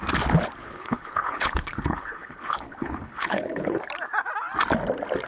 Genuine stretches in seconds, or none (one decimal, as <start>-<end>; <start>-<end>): 0.0-0.6; 3.8-5.3